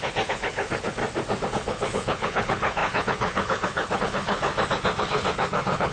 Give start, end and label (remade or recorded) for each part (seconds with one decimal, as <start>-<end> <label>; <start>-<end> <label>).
0.0-1.0 remade; 1.0-1.5 recorded; 1.5-4.5 remade; 4.5-5.0 recorded; 5.0-5.9 remade